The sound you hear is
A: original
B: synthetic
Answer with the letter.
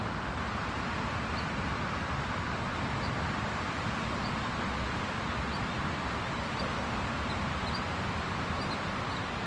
A